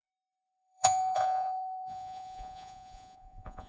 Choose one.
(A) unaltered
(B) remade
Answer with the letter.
B